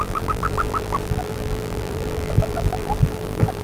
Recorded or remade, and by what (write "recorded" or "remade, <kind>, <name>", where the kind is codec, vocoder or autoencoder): remade, vocoder, BigVGAN v2